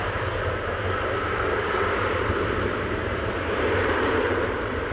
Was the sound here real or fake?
fake